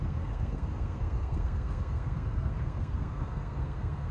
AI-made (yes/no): yes